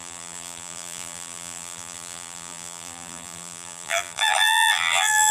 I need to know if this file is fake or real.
fake